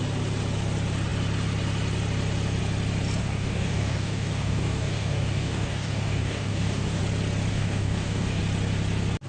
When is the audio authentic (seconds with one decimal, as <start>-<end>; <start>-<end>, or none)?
0.0-3.2; 7.0-7.5; 8.4-9.3

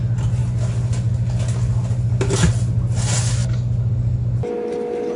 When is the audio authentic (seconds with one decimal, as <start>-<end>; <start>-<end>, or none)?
0.0-3.4; 3.9-5.2

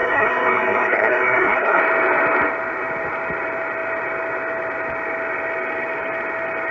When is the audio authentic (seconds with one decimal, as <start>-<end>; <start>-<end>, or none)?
1.8-6.7

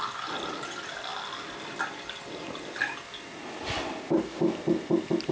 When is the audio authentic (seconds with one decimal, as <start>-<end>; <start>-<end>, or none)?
0.0-5.3

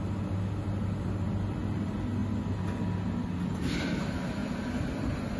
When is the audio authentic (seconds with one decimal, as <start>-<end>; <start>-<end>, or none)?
0.0-5.4

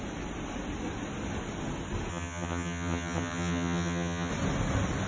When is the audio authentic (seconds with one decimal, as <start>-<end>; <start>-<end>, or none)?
0.0-2.1; 4.3-5.1

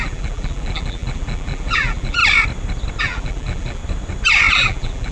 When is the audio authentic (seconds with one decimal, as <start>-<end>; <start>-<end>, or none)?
2.2-3.0; 3.8-4.5

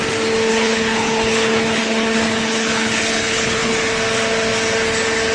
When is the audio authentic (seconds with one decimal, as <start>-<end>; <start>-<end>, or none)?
0.0-0.5; 3.7-5.3